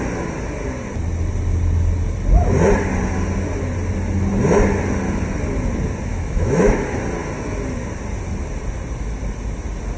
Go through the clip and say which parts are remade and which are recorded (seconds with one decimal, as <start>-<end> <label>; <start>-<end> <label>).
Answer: 0.0-6.1 recorded; 6.1-6.8 remade; 6.8-10.0 recorded